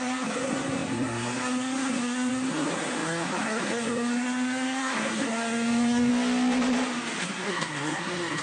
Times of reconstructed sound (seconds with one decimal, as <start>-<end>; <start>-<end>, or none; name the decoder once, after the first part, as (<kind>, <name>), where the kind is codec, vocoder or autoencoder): 0.0-6.1 (codec, SNAC); 7.2-8.4